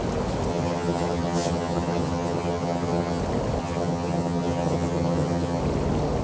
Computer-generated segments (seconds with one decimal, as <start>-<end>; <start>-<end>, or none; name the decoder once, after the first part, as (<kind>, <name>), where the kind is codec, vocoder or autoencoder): 0.5-3.2 (vocoder, HiFi-GAN); 3.6-5.6